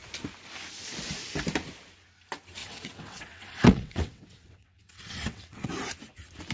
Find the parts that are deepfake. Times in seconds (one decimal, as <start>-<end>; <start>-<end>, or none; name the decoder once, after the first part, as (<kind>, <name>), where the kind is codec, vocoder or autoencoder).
2.6-5.7 (vocoder, WaveNeXt)